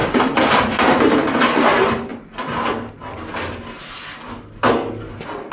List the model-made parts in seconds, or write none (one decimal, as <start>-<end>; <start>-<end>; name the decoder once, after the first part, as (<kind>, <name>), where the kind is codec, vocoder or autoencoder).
0.0-1.4 (vocoder, BigVGAN v2)